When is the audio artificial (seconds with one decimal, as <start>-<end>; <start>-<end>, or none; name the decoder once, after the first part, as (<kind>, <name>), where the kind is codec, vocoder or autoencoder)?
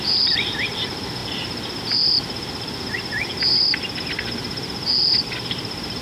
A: 0.0-1.2 (vocoder, BigVGAN v2); 1.8-3.5; 4.0-6.0